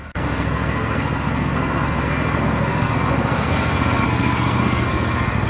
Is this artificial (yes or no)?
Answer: yes